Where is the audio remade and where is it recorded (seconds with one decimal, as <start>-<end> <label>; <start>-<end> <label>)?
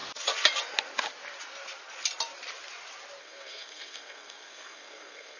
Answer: 0.0-3.2 recorded; 3.2-5.4 remade